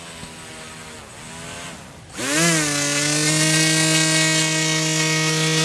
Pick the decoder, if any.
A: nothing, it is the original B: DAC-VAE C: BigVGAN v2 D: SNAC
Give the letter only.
A